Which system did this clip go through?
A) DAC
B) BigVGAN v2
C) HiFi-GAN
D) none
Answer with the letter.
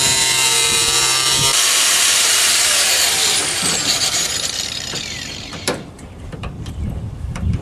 B